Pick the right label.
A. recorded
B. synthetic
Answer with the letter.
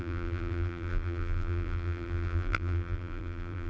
B